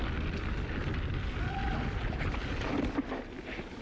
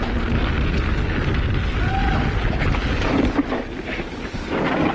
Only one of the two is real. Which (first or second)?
second